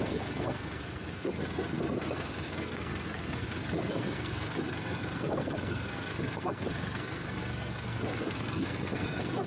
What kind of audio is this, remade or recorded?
remade